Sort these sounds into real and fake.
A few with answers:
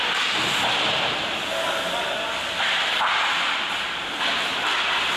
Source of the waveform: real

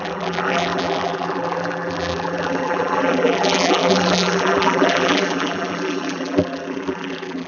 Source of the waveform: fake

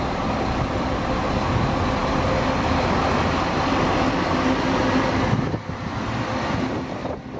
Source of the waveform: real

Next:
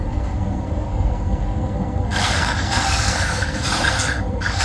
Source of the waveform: fake